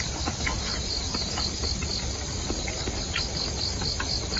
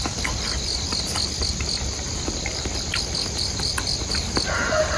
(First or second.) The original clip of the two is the first